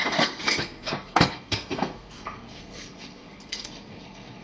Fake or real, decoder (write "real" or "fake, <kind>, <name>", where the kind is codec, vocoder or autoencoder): fake, codec, SNAC